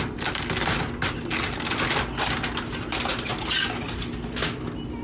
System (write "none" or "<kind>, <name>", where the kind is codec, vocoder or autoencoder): none